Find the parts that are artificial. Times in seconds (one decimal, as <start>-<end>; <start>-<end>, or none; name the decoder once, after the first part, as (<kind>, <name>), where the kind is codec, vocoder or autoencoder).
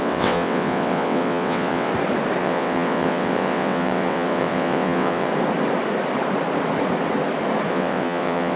0.0-1.9 (vocoder, WaveNeXt); 2.4-5.3; 7.7-8.6